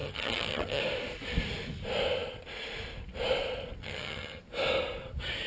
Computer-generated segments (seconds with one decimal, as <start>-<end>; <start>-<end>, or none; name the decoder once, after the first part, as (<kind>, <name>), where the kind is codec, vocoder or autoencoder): 0.0-0.8 (vocoder, HiFi-GAN); 3.8-4.4